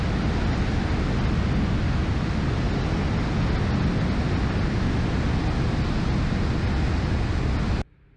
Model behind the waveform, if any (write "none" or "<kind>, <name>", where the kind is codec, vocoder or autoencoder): none